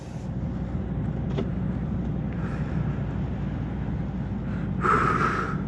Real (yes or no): yes